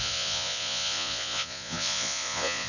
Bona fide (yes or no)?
no